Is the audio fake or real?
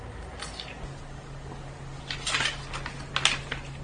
real